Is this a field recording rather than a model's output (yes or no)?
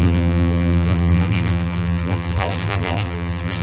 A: no